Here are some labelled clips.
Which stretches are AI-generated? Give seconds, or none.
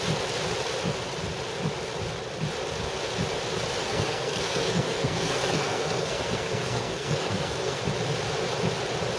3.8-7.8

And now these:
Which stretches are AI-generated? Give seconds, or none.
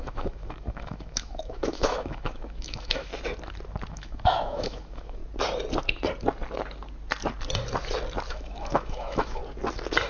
0.0-3.1; 3.9-5.2; 8.3-9.4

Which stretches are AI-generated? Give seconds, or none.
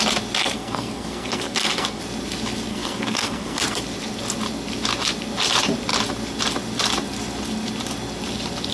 0.4-2.0; 2.7-3.8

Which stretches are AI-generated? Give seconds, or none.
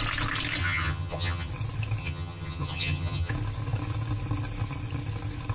0.6-1.5; 2.0-3.3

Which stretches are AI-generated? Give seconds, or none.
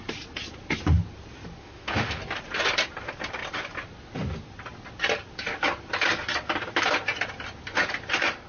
1.6-2.2